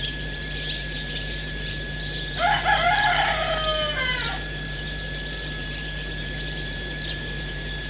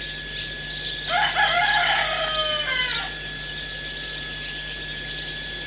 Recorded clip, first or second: second